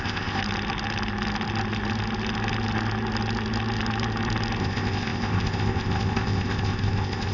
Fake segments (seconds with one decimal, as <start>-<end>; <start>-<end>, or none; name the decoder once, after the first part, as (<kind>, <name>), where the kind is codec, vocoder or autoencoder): 0.0-0.4 (codec, ZipCodec); 4.6-7.3